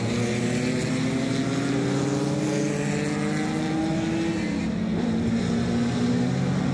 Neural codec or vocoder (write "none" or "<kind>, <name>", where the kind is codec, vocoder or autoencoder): none